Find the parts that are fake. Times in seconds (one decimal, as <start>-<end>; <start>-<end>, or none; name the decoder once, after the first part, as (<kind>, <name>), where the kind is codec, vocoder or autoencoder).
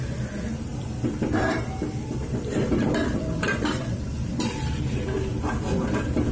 0.7-4.5 (vocoder, BigVGAN v2); 5.3-6.3